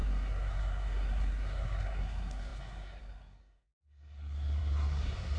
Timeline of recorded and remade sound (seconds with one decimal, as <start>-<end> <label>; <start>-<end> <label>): 0.0-5.4 remade